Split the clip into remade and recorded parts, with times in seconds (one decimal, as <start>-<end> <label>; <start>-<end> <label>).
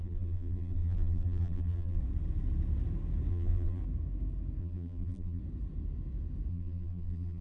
0.0-2.0 remade; 2.0-3.3 recorded; 3.3-3.8 remade; 3.8-4.6 recorded; 4.6-5.4 remade; 5.4-6.5 recorded; 6.5-7.4 remade